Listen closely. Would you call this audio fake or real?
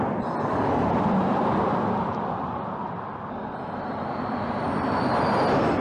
real